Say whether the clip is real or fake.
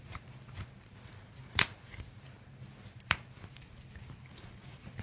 fake